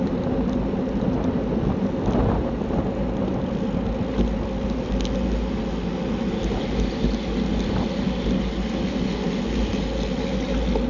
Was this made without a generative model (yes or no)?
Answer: yes